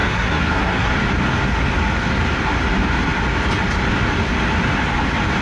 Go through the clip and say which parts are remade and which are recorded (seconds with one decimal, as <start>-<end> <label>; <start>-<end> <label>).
0.0-0.9 remade; 0.9-5.4 recorded